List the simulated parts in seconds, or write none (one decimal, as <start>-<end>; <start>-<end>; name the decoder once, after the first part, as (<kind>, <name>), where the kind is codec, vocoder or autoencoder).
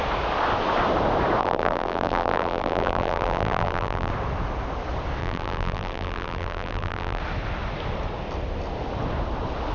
1.4-4.1 (vocoder, BigVGAN v2); 5.2-7.2